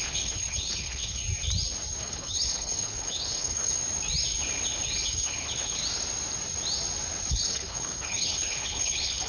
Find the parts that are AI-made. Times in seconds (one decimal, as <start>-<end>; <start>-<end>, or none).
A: 0.0-1.2; 2.0-3.8; 5.1-5.8; 7.3-9.3